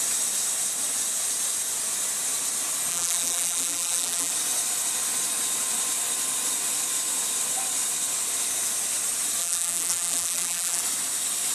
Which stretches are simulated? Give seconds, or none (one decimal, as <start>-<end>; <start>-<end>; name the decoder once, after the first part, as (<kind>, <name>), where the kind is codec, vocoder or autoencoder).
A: 2.9-4.3 (vocoder, BigVGAN v2); 9.4-10.8